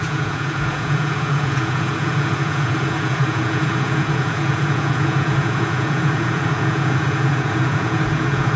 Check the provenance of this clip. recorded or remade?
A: remade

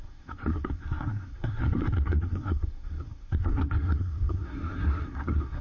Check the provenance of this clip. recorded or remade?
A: remade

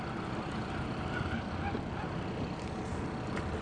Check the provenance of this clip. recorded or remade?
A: recorded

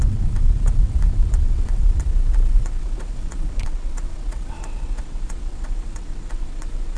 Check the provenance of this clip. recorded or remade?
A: remade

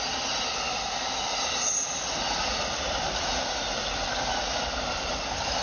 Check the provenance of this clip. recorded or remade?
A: recorded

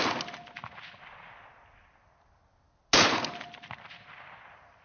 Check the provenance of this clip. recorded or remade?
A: recorded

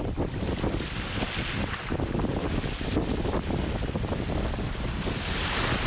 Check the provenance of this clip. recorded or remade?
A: recorded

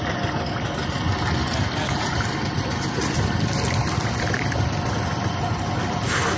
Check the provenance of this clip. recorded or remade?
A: recorded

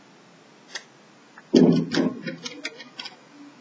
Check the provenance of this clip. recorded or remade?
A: recorded